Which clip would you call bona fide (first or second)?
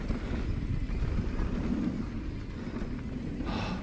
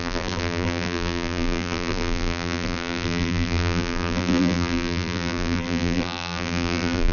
first